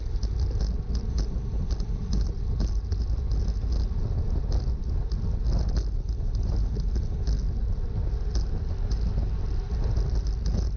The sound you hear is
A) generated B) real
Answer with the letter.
B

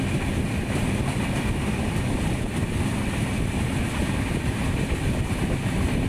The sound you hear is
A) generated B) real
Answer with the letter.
B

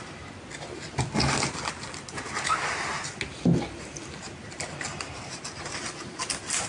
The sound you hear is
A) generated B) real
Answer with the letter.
B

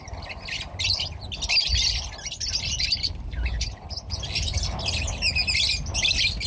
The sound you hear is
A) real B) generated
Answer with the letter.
A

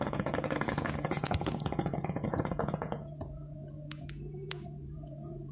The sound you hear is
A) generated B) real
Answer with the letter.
A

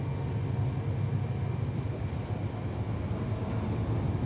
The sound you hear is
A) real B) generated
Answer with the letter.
A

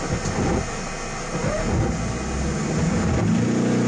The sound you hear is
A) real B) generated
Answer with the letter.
A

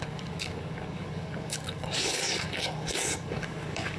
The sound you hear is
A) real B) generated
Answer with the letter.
B